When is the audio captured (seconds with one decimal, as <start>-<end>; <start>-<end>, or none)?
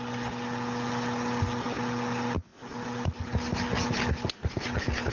0.0-5.1